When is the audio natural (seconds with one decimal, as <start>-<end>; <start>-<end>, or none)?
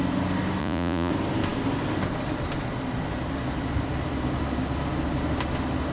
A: 0.0-0.6; 1.1-5.9